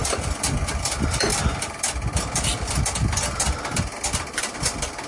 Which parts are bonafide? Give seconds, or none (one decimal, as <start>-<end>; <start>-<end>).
0.0-5.1